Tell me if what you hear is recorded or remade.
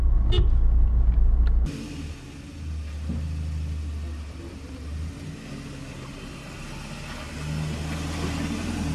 recorded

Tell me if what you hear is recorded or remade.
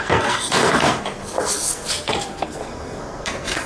remade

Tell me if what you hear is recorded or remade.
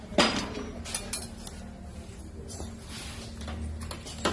recorded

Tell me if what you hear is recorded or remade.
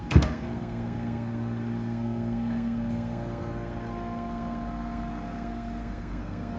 remade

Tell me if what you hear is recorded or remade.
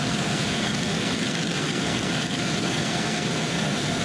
remade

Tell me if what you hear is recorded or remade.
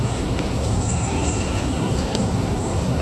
remade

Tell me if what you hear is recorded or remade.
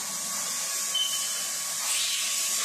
recorded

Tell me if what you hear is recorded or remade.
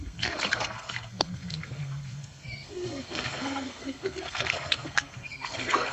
remade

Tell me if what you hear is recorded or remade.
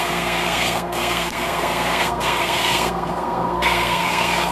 remade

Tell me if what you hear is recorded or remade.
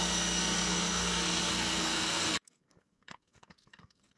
remade